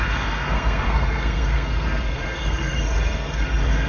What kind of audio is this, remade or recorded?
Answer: remade